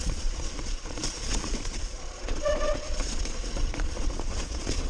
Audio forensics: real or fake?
fake